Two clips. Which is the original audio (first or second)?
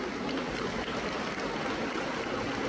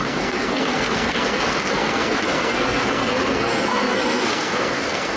first